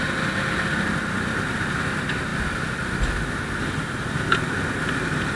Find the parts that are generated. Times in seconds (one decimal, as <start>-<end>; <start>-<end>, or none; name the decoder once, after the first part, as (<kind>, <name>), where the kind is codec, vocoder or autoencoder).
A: none